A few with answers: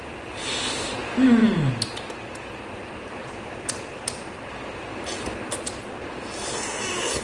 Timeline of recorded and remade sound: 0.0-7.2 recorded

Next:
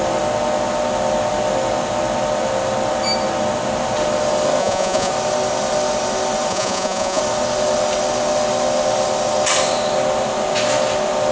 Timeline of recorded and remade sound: 0.0-4.6 recorded; 4.6-5.1 remade; 5.1-6.5 recorded; 6.5-7.2 remade; 7.2-11.3 recorded

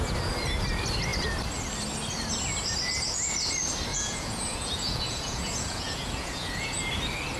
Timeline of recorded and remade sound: 0.0-3.9 recorded; 3.9-6.9 remade; 6.9-7.4 recorded

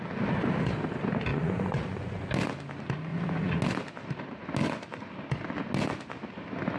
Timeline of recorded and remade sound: 0.0-1.3 recorded; 1.3-2.3 remade; 2.3-3.1 recorded; 3.1-3.6 remade; 3.6-6.8 recorded